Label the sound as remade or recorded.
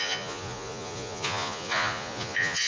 remade